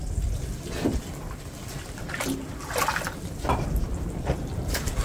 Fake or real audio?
real